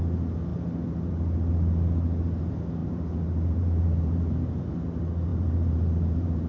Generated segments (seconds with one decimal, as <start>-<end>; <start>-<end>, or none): 0.5-1.1; 2.8-4.6; 5.3-6.5